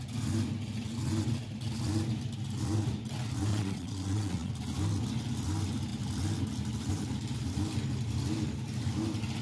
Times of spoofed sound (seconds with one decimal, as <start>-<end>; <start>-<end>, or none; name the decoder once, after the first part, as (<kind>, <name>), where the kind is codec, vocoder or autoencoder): 3.5-4.5 (vocoder, Vocos)